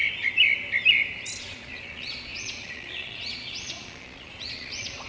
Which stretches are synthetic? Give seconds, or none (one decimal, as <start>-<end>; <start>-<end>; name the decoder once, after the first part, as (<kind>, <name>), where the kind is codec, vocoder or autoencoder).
1.4-5.1 (vocoder, Vocos)